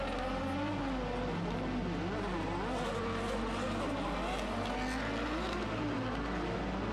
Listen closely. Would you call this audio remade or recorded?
recorded